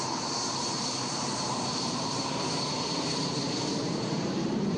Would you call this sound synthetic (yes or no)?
yes